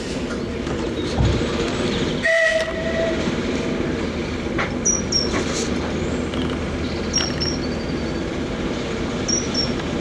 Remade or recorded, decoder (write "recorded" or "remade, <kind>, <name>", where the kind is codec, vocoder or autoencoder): recorded